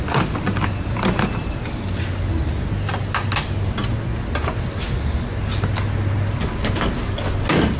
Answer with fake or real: real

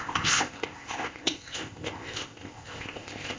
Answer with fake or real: fake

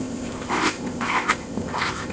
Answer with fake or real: fake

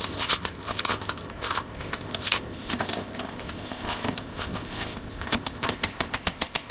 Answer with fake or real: fake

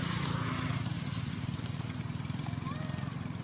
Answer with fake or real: real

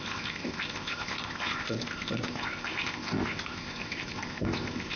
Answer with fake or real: fake